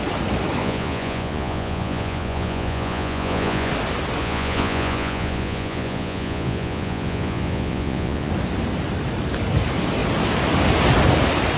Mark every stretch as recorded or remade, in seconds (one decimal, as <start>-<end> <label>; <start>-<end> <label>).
0.0-0.6 recorded; 0.6-3.7 remade; 3.7-4.2 recorded; 4.2-8.3 remade; 8.3-11.6 recorded